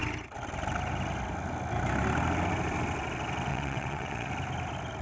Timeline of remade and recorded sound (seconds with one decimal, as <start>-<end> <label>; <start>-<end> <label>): 0.0-3.5 recorded; 3.5-4.3 remade; 4.3-5.0 recorded